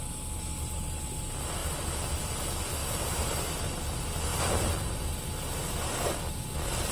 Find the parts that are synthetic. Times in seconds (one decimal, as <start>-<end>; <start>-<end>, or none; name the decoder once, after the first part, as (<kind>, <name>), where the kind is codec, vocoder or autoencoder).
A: none